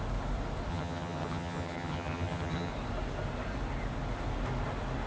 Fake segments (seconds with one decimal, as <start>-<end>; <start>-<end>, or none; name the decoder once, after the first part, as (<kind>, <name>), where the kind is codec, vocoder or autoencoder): 0.7-2.7 (vocoder, HiFi-GAN)